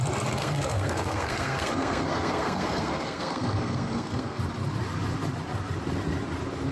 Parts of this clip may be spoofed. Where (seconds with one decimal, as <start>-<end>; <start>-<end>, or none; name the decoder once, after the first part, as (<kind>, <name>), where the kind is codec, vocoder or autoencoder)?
0.4-4.4 (codec, SNAC)